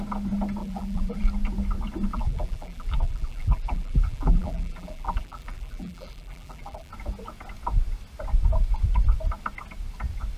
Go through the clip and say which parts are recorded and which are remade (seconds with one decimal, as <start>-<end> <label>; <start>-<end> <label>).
0.0-0.6 recorded; 0.6-1.2 remade; 1.2-2.1 recorded; 2.1-6.9 remade; 6.9-10.4 recorded